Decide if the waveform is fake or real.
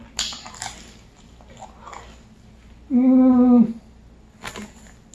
real